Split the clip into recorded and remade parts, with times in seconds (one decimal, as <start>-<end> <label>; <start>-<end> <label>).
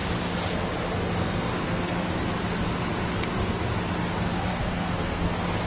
0.0-1.2 recorded; 1.2-2.1 remade; 2.1-4.5 recorded; 4.5-5.3 remade; 5.3-5.7 recorded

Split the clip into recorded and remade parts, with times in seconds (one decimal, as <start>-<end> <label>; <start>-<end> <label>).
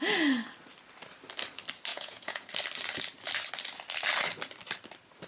0.0-1.9 recorded; 1.9-2.5 remade; 2.5-5.3 recorded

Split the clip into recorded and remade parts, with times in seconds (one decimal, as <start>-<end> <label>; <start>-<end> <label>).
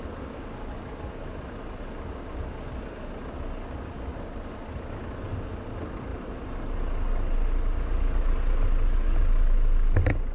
0.0-10.3 recorded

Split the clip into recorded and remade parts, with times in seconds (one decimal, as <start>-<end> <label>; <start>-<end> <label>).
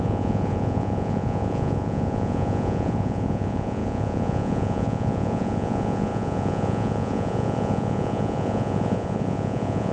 0.0-9.9 remade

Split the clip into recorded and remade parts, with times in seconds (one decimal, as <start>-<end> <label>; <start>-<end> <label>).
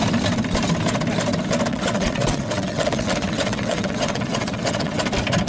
0.0-1.7 recorded; 1.7-5.0 remade; 5.0-5.5 recorded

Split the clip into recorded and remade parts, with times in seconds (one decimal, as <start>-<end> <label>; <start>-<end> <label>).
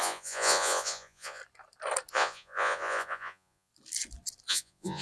0.0-1.4 remade; 1.4-2.1 recorded; 2.1-3.7 remade; 3.7-4.5 recorded; 4.5-5.0 remade